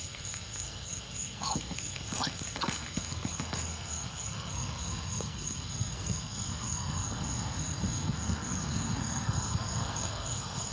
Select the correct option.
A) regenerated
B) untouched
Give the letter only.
A